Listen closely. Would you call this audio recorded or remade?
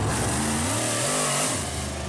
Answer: recorded